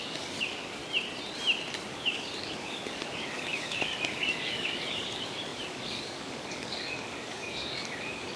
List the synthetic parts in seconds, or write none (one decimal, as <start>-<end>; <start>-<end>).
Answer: 0.0-0.8; 1.9-8.4